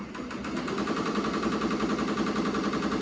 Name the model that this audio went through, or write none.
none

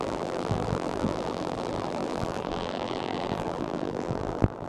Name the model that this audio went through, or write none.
vocoder, BigVGAN v2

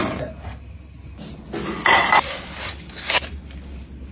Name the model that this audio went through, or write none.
none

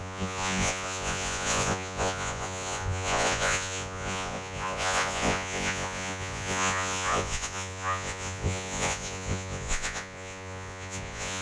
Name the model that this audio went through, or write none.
vocoder, Vocos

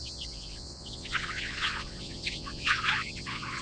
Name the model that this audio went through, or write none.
vocoder, Vocos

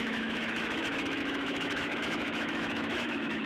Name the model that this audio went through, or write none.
autoencoder, DAC-VAE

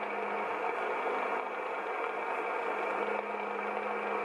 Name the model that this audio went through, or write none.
none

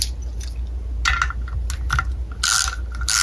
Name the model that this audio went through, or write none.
none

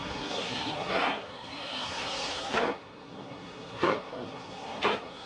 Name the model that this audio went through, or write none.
codec, SNAC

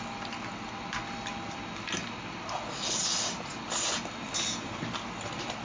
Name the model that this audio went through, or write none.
none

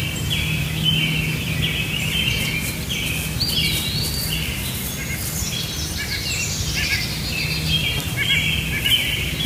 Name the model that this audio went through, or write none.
none